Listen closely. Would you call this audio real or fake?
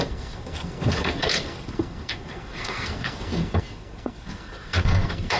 fake